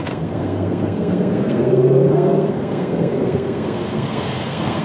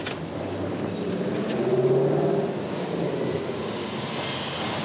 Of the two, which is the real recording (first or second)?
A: second